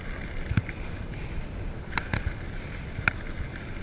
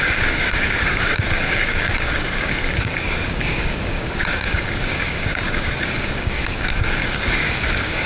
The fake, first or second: second